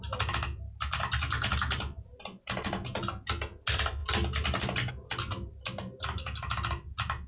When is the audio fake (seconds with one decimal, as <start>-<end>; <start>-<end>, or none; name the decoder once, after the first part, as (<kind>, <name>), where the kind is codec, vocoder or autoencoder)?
none